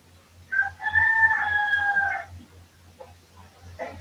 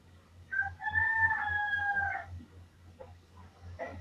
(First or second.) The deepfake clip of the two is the second